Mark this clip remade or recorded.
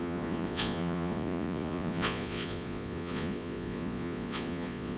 remade